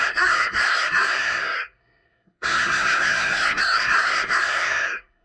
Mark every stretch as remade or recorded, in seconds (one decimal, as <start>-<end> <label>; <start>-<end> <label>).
0.0-5.2 remade